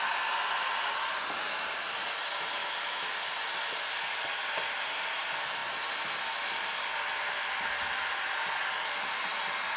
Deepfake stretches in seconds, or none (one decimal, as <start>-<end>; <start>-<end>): 2.6-3.1